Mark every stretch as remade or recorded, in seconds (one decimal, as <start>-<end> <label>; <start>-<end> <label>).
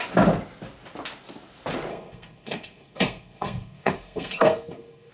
0.0-1.9 recorded; 1.9-5.1 remade